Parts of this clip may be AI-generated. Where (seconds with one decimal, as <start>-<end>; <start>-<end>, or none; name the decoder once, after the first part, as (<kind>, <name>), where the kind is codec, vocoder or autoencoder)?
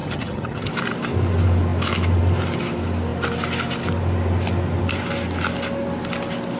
0.0-0.7 (vocoder, HiFi-GAN)